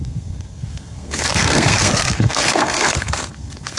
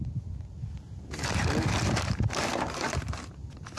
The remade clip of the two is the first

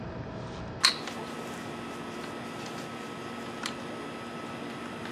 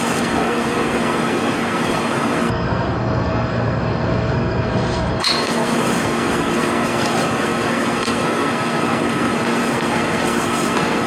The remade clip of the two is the second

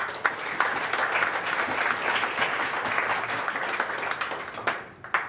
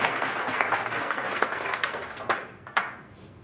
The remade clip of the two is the second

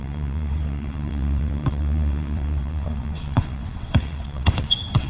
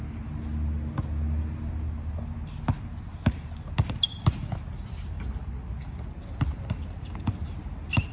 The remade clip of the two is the first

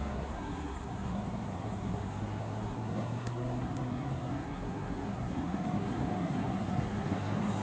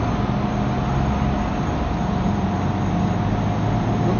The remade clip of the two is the first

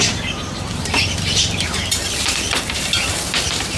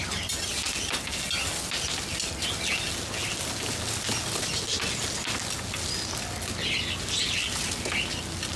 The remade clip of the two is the first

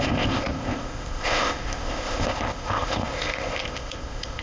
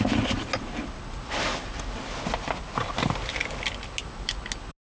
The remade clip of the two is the first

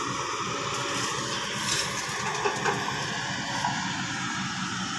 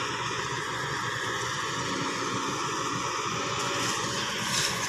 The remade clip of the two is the second